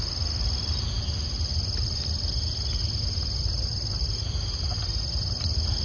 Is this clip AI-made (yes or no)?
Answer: no